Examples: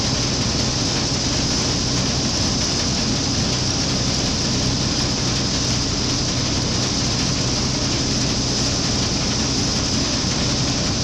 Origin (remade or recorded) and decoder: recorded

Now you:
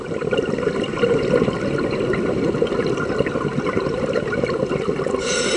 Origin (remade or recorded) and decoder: recorded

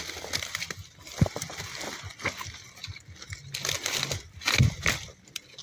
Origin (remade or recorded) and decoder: recorded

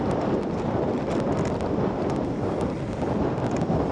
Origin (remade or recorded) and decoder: recorded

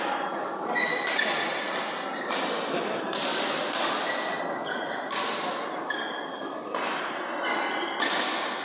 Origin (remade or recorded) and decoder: recorded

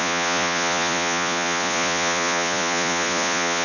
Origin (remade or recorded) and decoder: remade, vocoder, Vocos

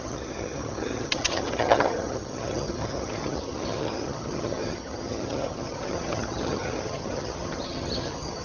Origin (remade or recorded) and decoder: remade, vocoder, HiFi-GAN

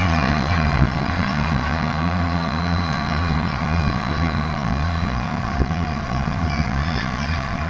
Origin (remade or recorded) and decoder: remade, vocoder, Vocos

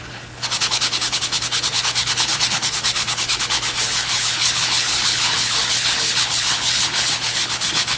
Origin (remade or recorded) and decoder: remade, codec, HILCodec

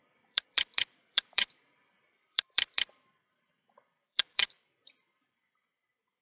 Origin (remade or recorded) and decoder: remade, vocoder, BigVGAN v2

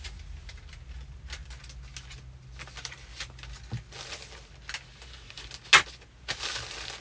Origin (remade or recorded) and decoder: recorded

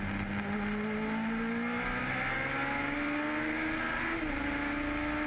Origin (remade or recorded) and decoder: recorded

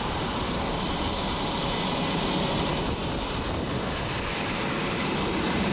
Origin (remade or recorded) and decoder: recorded